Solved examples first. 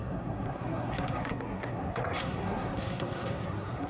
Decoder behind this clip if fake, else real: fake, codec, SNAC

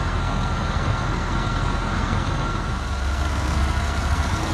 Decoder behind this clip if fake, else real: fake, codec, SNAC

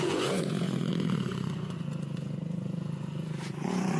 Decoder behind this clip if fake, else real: fake, vocoder, Vocos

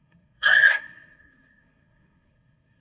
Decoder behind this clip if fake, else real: fake, codec, SNAC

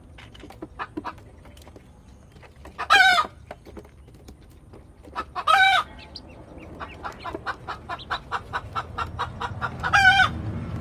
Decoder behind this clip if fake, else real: real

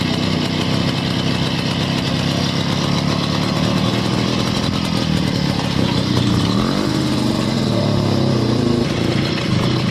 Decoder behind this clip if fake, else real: real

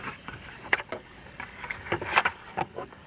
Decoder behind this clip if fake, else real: fake, codec, DAC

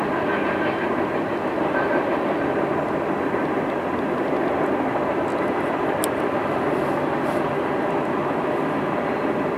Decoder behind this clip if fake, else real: real